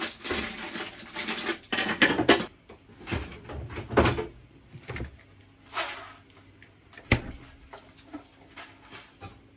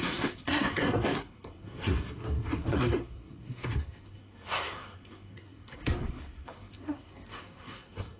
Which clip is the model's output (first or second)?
second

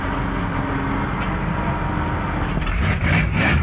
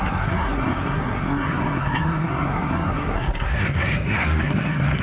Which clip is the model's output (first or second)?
second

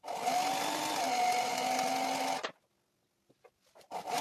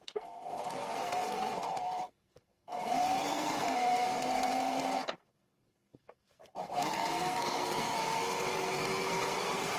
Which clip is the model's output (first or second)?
second